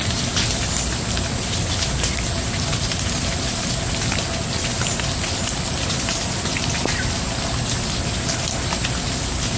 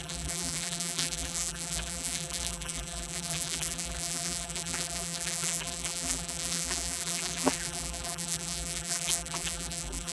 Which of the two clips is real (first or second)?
first